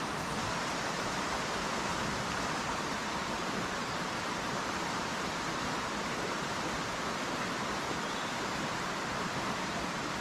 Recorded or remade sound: remade